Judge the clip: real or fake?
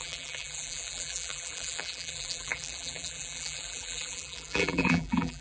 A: fake